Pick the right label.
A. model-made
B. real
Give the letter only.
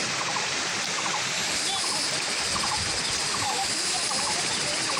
B